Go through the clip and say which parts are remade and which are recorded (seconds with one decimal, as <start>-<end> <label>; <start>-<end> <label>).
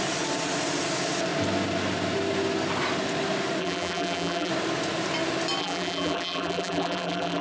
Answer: 0.0-3.6 recorded; 3.6-4.5 remade; 4.5-5.6 recorded; 5.6-7.4 remade